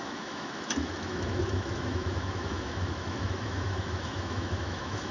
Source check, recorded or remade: remade